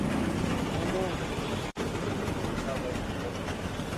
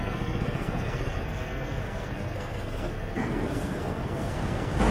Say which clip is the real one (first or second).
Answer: first